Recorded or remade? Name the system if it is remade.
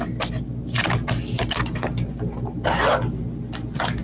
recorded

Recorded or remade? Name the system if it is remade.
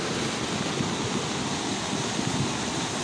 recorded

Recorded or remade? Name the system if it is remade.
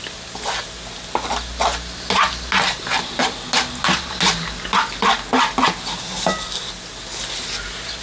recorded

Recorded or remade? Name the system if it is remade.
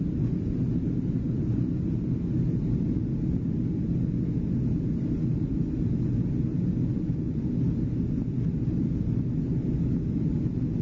recorded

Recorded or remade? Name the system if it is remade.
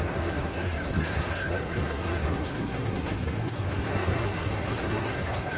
remade, codec, SNAC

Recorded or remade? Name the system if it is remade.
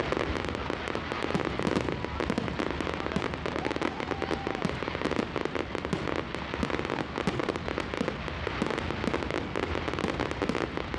recorded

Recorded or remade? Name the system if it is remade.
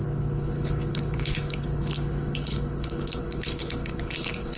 remade, codec, HILCodec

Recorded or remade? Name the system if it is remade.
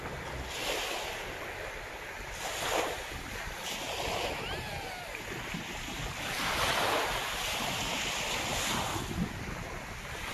recorded